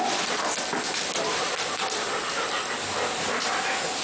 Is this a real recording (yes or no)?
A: yes